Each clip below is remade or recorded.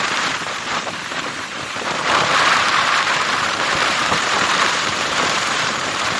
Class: remade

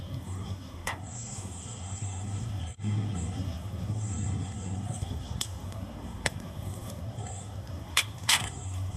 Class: remade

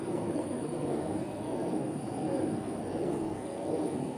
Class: remade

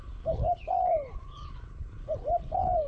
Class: remade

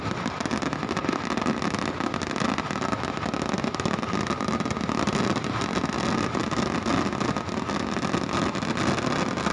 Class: recorded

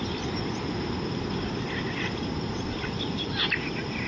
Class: recorded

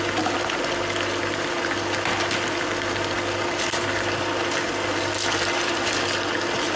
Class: recorded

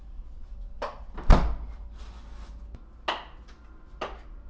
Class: recorded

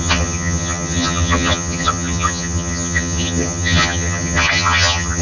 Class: remade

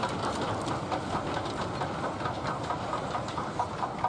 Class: recorded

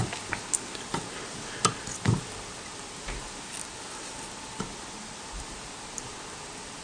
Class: recorded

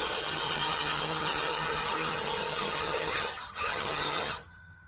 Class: remade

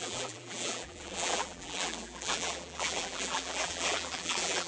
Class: remade